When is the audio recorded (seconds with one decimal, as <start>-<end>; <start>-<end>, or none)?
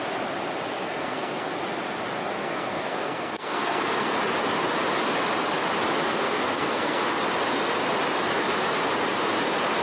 0.0-0.8; 1.5-2.4; 4.1-6.1; 7.0-9.8